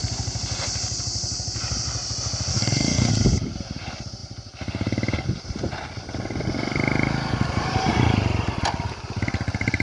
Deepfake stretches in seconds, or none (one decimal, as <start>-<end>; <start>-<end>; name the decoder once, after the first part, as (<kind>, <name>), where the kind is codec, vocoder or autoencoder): 2.5-3.1 (codec, SNAC)